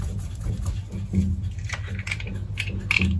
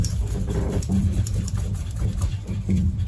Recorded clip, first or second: first